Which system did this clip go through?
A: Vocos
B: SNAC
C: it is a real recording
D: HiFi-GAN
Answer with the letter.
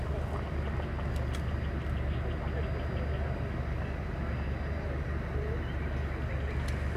C